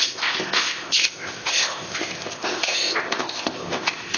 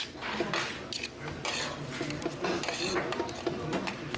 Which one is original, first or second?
second